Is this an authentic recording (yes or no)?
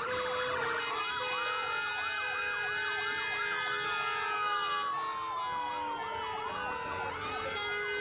yes